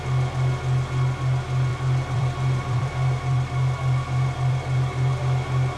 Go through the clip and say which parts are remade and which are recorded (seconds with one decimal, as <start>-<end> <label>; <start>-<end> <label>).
0.0-1.7 recorded; 1.7-5.2 remade; 5.2-5.8 recorded